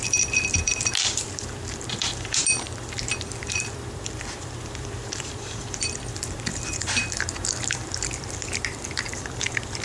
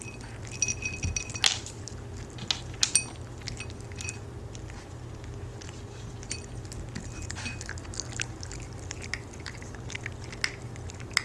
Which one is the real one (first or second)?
second